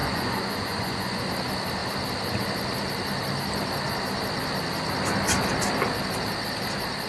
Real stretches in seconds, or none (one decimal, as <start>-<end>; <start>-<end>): 1.2-7.1